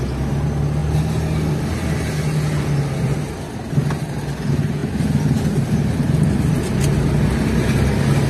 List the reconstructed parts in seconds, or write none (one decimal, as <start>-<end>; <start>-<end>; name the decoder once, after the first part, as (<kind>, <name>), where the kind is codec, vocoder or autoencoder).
none